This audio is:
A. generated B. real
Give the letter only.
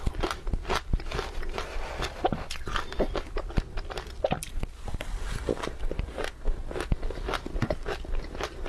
B